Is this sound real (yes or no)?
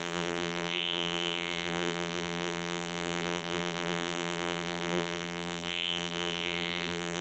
no